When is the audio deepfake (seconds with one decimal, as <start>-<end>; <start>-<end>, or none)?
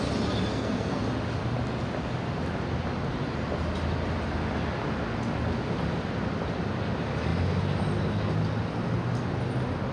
0.5-1.0